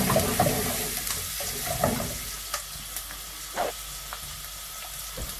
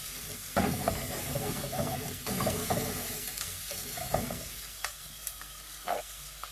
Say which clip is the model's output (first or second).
second